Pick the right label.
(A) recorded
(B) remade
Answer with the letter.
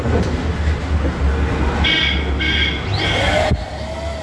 A